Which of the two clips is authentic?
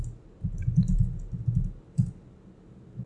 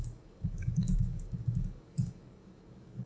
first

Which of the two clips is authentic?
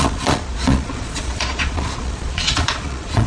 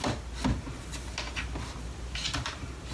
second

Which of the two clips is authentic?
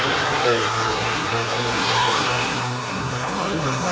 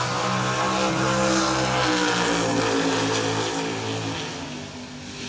second